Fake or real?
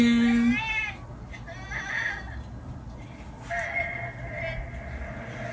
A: real